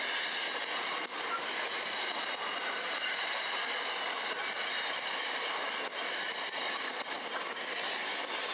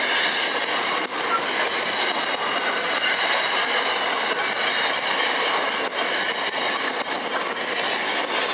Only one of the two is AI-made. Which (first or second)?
first